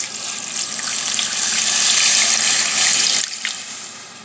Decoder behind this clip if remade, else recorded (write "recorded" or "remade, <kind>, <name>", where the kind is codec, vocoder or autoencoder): recorded